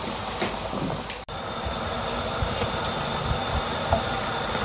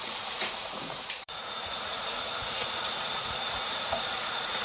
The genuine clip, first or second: first